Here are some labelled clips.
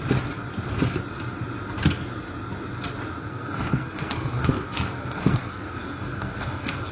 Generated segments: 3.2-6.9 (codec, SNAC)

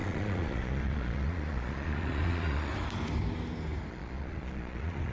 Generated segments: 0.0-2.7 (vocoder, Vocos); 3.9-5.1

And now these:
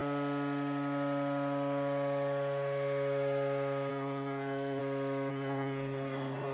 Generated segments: 3.9-4.8 (codec, SNAC); 5.3-6.5

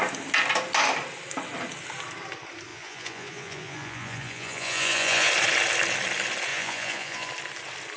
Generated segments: 2.7-5.3 (vocoder, Vocos); 6.5-7.3

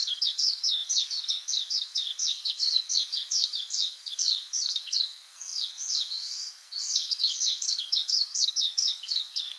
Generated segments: 0.0-9.6 (codec, SNAC)